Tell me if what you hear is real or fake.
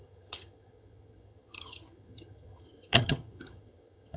fake